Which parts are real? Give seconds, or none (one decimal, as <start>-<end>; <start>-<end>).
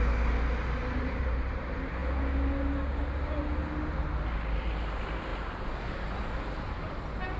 0.0-0.8; 1.6-5.3; 7.0-7.4